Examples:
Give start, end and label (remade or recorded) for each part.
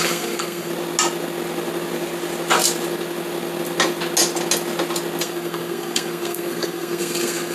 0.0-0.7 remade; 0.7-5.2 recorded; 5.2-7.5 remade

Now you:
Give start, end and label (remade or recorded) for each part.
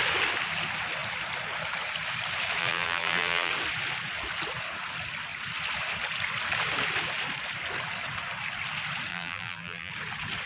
0.0-2.6 recorded; 2.6-3.5 remade; 3.5-9.1 recorded; 9.1-9.9 remade; 9.9-10.5 recorded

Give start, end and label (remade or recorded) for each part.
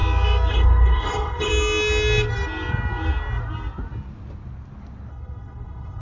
0.0-0.5 recorded; 0.5-1.5 remade; 1.5-5.1 recorded; 5.1-6.0 remade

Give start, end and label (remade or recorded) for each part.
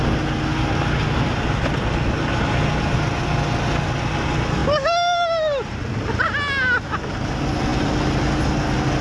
0.0-4.6 recorded; 4.6-6.1 remade; 6.1-7.7 recorded; 7.7-8.6 remade; 8.6-9.0 recorded